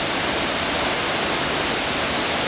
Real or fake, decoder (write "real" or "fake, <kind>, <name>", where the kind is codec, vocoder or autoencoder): real